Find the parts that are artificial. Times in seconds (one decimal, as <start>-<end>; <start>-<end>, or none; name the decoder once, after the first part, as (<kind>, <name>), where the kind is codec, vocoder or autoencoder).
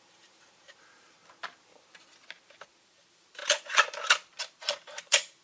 0.0-1.2 (vocoder, BigVGAN v2); 2.9-3.4; 4.4-5.4